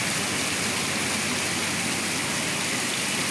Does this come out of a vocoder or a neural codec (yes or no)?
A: no